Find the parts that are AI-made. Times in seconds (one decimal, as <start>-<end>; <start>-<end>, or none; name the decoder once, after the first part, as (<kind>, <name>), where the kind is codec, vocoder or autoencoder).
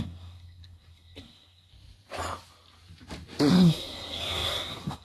0.0-1.7 (codec, SNAC); 3.5-5.0